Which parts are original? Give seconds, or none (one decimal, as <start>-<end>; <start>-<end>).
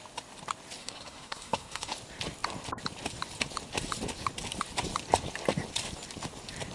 0.0-0.8; 1.9-6.7